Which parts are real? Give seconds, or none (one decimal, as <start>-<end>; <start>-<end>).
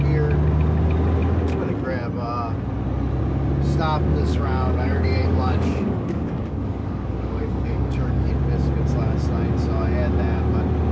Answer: 0.0-4.1; 8.3-10.9